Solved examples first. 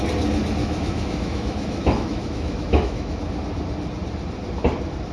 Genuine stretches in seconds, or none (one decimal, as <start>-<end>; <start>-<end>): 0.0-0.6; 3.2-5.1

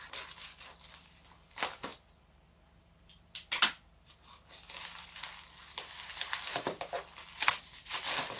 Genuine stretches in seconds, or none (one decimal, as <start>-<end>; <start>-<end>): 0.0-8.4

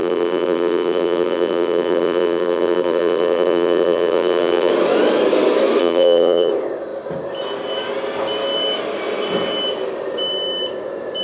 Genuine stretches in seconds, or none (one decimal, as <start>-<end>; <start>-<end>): 4.7-5.8; 6.5-11.2